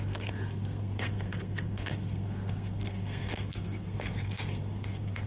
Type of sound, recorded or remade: remade